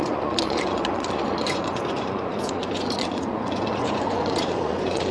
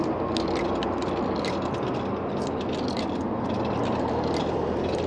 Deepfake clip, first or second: first